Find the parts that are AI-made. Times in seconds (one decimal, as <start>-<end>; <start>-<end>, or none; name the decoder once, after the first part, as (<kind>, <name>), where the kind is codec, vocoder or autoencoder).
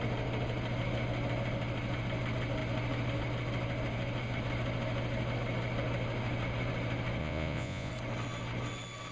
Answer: 7.2-7.9 (vocoder, Vocos)